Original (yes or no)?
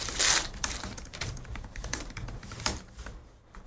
no